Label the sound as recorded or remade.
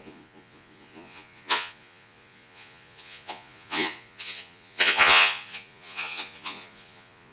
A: remade